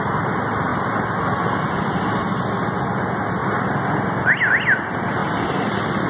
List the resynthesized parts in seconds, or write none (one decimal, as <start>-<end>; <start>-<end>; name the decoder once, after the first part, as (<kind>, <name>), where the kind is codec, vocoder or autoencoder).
5.2-6.1 (vocoder, BigVGAN v2)